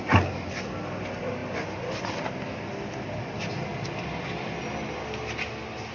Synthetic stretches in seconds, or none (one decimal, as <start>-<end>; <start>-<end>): none